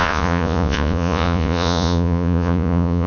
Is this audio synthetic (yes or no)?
yes